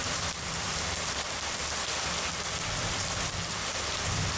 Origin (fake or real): real